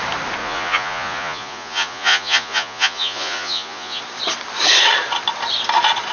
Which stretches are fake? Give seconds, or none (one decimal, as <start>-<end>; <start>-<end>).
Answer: 0.4-4.0